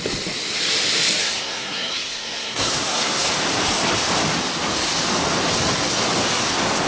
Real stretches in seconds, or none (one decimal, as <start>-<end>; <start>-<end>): 0.0-1.2; 3.3-6.9